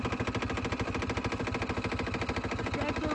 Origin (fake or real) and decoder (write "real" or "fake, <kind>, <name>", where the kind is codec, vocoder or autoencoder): real